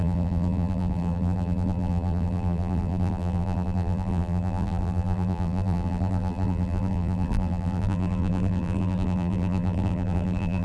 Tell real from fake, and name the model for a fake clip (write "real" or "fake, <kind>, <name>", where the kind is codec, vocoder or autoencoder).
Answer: fake, vocoder, BigVGAN v2